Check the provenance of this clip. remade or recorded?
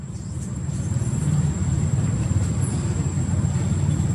remade